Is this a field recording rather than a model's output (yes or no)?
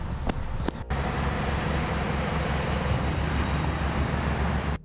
yes